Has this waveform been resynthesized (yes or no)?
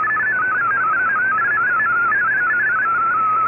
no